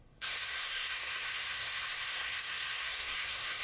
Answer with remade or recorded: remade